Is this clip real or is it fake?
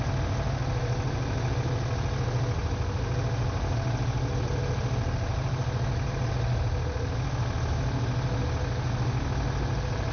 real